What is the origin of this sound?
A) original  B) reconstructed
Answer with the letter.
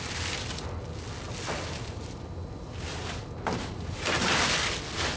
A